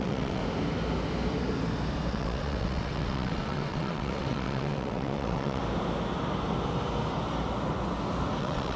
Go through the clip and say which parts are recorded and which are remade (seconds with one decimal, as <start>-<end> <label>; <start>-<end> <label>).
0.0-0.4 remade; 0.4-2.1 recorded; 2.1-5.6 remade; 5.6-8.4 recorded; 8.4-8.8 remade